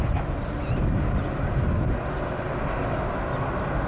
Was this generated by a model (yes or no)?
no